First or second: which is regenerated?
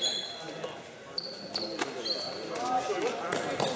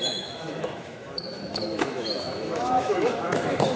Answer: second